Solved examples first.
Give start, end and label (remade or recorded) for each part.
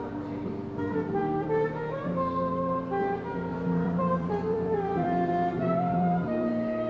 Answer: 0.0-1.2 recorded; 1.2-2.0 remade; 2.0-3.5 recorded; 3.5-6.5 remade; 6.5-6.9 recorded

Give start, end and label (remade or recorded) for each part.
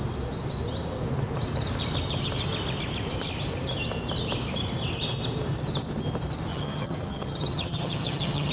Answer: 0.0-6.5 recorded; 6.5-8.5 remade